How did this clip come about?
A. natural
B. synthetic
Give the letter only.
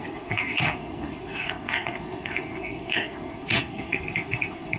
B